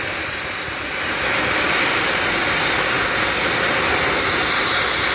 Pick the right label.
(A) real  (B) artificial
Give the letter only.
A